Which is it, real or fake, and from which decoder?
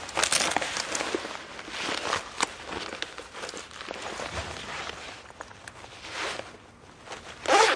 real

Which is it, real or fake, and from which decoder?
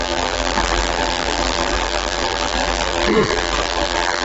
fake, vocoder, BigVGAN v2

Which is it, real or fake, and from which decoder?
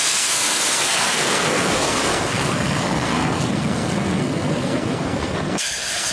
fake, codec, SNAC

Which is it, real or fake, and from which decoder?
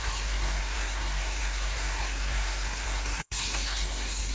fake, codec, SNAC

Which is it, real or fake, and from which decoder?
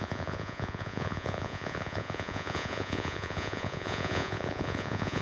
fake, vocoder, Vocos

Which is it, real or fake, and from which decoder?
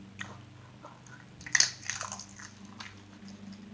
real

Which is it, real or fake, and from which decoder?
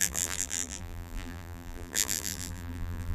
fake, vocoder, BigVGAN v2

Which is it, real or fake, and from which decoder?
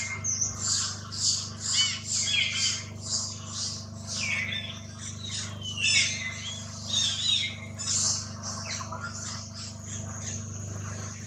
real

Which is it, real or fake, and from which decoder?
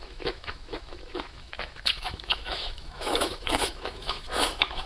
fake, autoencoder, DAC-VAE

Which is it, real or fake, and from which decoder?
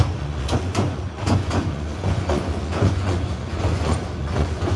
fake, vocoder, Vocos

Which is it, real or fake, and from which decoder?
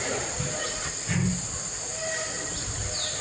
real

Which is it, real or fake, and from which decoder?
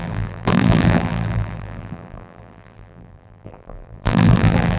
fake, vocoder, BigVGAN v2